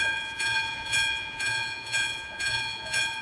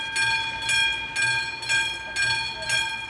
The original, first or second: second